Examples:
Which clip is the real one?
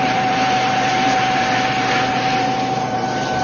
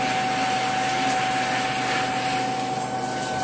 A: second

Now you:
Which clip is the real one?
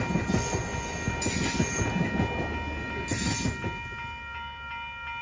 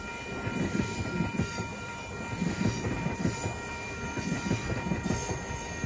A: first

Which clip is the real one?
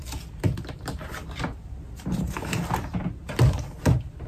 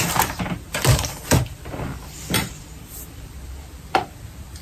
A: first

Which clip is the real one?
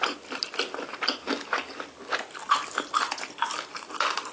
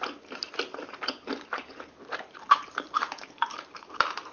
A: first